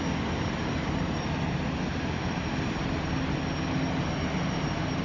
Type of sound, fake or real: real